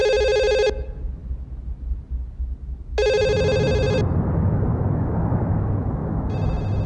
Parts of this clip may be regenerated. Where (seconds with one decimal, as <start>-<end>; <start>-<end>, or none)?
none